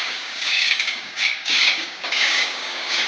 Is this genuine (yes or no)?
no